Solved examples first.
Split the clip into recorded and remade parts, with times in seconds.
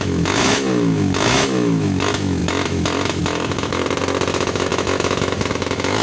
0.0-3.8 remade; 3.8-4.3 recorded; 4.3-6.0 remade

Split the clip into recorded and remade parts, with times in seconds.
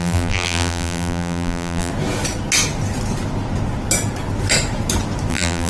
0.0-1.9 remade; 1.9-5.3 recorded; 5.3-5.7 remade